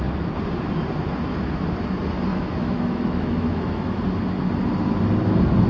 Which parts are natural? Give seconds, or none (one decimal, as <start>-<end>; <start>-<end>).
0.0-2.3; 4.0-5.7